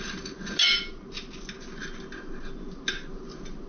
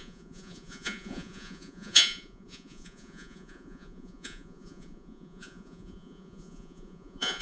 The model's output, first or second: second